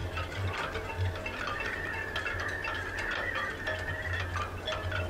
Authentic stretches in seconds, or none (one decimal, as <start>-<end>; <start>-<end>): 0.0-5.1